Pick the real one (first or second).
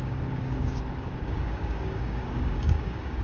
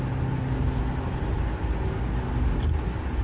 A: second